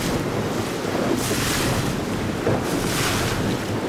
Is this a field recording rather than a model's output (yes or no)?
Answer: yes